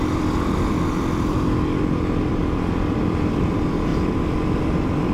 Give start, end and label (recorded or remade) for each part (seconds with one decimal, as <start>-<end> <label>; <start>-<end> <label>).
0.0-3.9 remade; 3.9-4.6 recorded; 4.6-5.1 remade